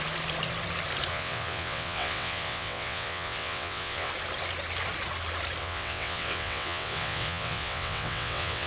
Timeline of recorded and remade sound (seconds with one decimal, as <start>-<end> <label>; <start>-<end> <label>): 0.0-1.1 recorded; 1.1-4.1 remade; 4.1-5.6 recorded; 5.6-8.7 remade

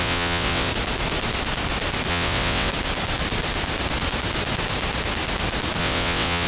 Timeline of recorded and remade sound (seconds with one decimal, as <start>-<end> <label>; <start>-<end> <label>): 0.0-0.7 remade; 0.7-2.1 recorded; 2.1-2.7 remade; 2.7-5.8 recorded; 5.8-6.5 remade

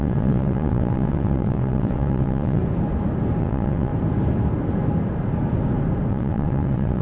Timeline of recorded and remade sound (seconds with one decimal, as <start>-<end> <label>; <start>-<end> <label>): 0.0-2.6 remade; 2.6-3.4 recorded; 3.4-3.9 remade; 3.9-6.1 recorded; 6.1-7.0 remade

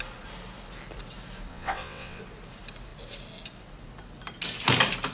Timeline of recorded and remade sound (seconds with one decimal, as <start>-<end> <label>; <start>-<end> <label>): 0.0-1.5 recorded; 1.5-2.2 remade; 2.2-5.1 recorded

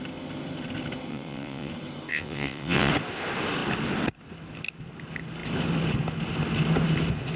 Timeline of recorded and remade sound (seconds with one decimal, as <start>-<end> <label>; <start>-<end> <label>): 0.0-1.1 recorded; 1.1-1.7 remade; 1.7-2.1 recorded; 2.1-2.9 remade; 2.9-7.4 recorded

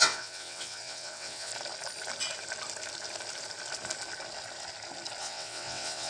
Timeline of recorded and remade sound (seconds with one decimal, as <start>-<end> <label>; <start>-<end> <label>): 0.0-1.5 remade; 1.5-5.2 recorded; 5.2-6.1 remade

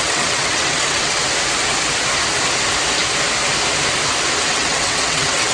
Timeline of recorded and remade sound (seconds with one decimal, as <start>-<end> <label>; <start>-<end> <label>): 0.0-1.2 remade; 1.2-4.5 recorded; 4.5-5.5 remade